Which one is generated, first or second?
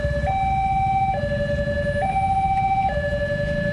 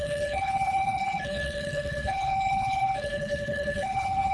second